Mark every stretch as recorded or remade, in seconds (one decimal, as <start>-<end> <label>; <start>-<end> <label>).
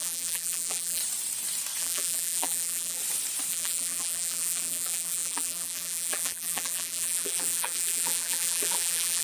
0.0-1.0 remade; 1.0-1.8 recorded; 1.8-3.0 remade; 3.0-3.5 recorded; 3.5-9.2 remade